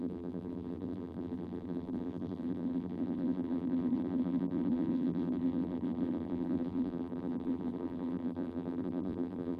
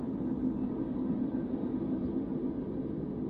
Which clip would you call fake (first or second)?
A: first